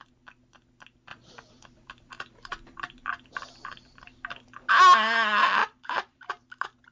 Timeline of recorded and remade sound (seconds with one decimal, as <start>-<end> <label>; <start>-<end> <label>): 0.0-1.1 recorded; 1.1-4.7 remade; 4.7-5.6 recorded; 5.6-6.3 remade; 6.3-6.9 recorded